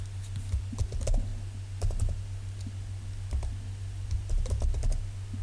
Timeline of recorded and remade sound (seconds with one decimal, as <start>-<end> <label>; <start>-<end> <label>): 0.0-5.4 recorded